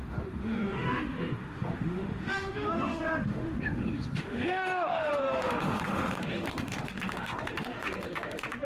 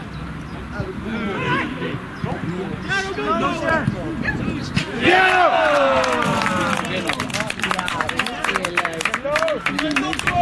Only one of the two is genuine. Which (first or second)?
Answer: second